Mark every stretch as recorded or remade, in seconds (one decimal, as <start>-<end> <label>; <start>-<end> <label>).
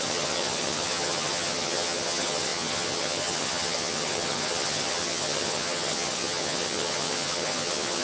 0.0-8.0 remade